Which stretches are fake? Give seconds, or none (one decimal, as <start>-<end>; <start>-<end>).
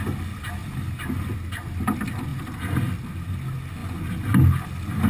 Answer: 0.6-1.3